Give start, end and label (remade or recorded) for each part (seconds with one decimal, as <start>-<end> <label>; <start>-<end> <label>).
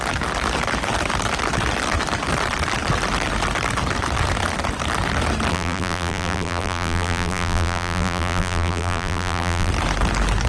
0.0-5.5 recorded; 5.5-9.7 remade; 9.7-10.5 recorded